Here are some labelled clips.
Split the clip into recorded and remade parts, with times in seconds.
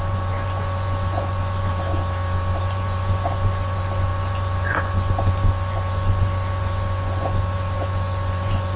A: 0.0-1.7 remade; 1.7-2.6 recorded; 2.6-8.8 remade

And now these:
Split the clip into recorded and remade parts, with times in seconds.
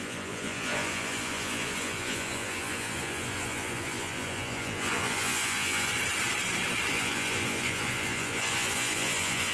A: 0.0-5.9 remade; 5.9-6.9 recorded; 6.9-9.5 remade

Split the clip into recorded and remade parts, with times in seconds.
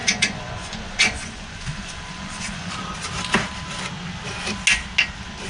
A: 0.0-2.7 remade; 2.7-5.5 recorded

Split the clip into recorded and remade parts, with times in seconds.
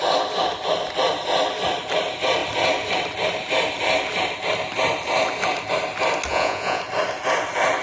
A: 0.0-6.3 recorded; 6.3-6.8 remade; 6.8-7.8 recorded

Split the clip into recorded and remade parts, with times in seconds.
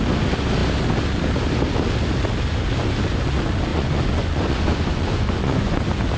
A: 0.0-3.7 recorded; 3.7-5.8 remade; 5.8-6.2 recorded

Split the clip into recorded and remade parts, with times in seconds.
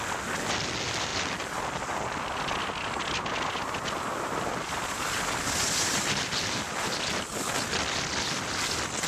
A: 0.0-9.1 recorded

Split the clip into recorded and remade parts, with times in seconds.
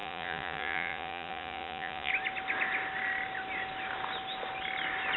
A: 0.0-2.1 remade; 2.1-5.2 recorded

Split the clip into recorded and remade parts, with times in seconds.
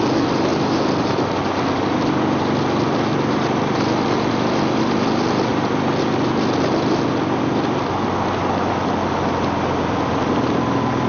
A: 0.0-11.1 recorded